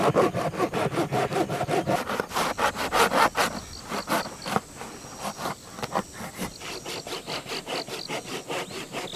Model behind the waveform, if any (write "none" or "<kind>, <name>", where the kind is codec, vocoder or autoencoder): none